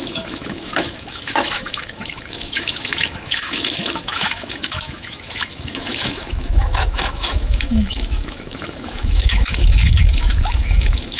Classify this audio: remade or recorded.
remade